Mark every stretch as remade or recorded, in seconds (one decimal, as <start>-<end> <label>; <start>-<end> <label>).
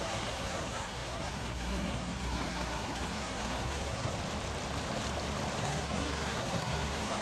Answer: 0.0-4.1 remade; 4.1-5.6 recorded; 5.6-7.2 remade